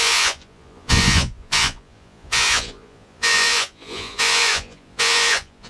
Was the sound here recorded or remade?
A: remade